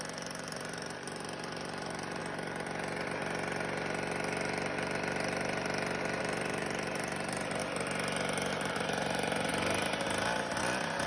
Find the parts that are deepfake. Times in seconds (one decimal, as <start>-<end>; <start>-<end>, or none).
0.0-2.2; 6.2-7.6; 8.5-9.5; 10.6-11.1